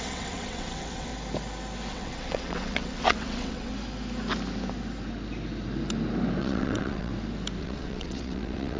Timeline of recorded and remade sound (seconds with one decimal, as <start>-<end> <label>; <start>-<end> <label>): 0.0-1.1 remade; 1.1-1.9 recorded; 1.9-3.7 remade; 3.7-6.4 recorded; 6.4-7.1 remade; 7.1-7.6 recorded; 7.6-8.8 remade